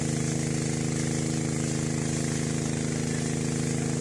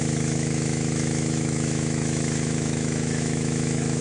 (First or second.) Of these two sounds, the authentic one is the first